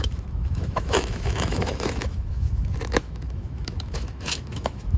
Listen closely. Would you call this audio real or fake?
fake